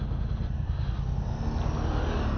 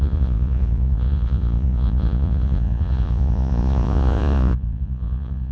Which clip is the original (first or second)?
first